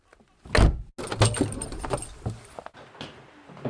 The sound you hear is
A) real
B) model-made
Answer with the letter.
A